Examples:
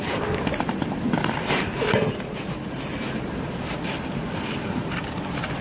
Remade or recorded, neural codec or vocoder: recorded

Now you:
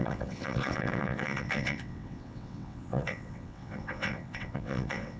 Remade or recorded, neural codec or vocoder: remade, vocoder, WaveNeXt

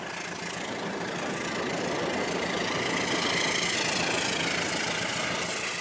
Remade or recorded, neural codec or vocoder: recorded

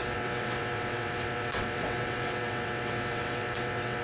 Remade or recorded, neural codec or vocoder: remade, vocoder, WaveNeXt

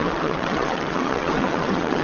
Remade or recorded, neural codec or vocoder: remade, vocoder, WaveNeXt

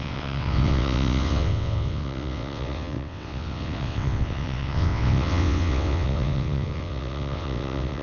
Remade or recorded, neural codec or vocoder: remade, vocoder, WaveNeXt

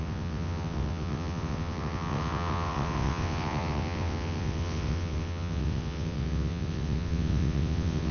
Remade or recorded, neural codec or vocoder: remade, vocoder, WaveNeXt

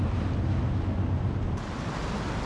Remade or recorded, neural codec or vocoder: recorded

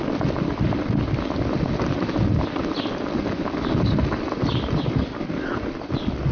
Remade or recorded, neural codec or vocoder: recorded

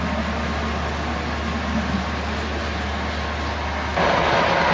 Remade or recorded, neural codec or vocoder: recorded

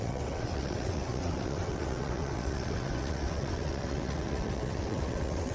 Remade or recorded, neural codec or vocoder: remade, vocoder, WaveNeXt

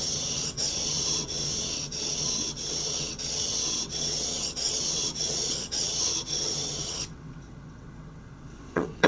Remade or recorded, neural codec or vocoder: remade, vocoder, WaveNeXt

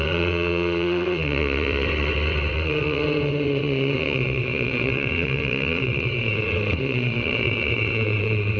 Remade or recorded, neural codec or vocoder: remade, vocoder, WaveNeXt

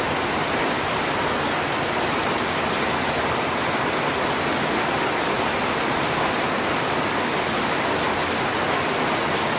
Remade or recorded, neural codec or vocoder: recorded